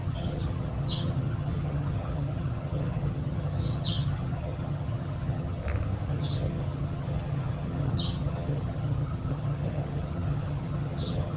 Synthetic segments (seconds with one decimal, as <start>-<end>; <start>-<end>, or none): 0.0-5.6; 6.1-11.4